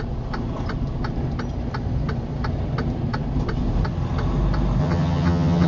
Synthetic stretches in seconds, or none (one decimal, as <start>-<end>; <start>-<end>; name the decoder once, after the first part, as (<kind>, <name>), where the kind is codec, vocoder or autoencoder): 4.8-5.7 (vocoder, HiFi-GAN)